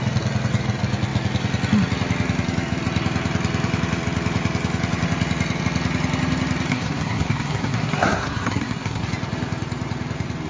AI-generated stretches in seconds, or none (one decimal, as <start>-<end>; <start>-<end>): 6.7-9.0